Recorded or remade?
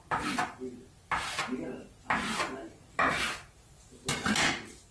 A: recorded